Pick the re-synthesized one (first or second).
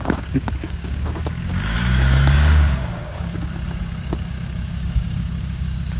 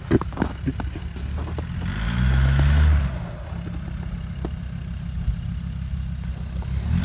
first